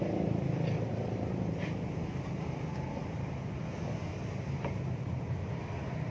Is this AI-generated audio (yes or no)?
no